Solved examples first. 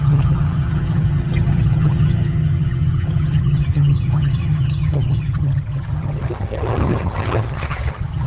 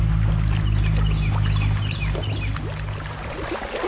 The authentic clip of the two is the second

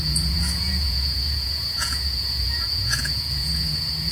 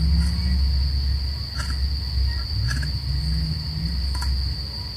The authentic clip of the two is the second